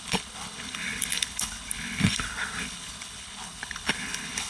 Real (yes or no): no